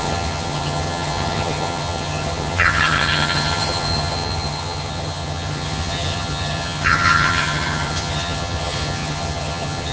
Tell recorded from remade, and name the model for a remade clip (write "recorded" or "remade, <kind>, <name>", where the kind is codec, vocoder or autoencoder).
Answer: remade, vocoder, HiFi-GAN